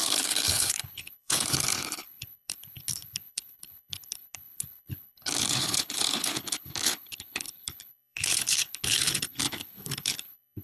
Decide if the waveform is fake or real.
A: fake